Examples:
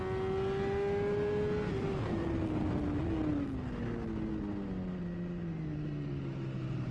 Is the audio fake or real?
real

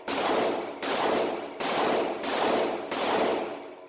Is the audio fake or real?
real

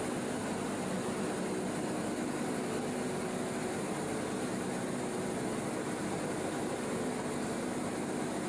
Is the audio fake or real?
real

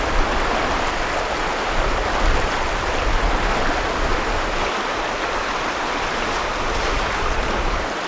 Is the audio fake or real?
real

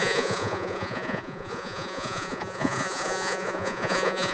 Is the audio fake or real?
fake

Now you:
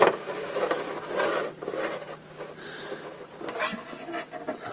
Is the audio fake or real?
real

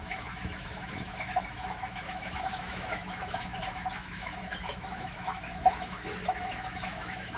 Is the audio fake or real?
fake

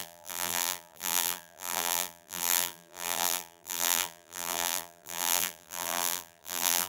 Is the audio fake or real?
fake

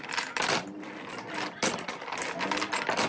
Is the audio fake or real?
real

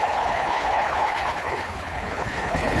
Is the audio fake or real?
fake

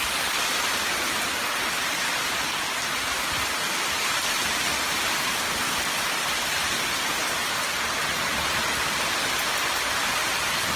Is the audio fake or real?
real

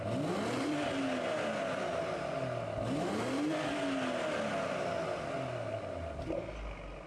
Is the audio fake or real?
real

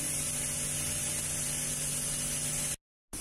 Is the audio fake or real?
real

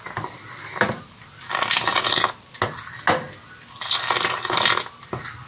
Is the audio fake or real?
real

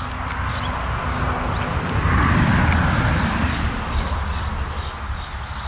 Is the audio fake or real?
real